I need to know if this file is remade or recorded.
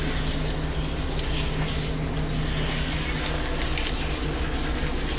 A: recorded